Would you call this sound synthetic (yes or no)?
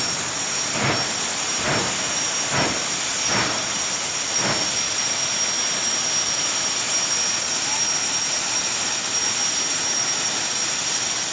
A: no